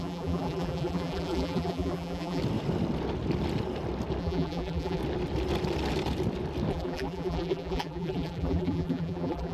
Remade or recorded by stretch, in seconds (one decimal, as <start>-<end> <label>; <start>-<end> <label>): 0.0-2.4 remade; 2.4-4.2 recorded; 4.2-5.0 remade; 5.0-6.7 recorded; 6.7-9.5 remade